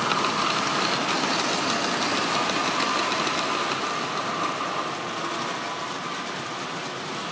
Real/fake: real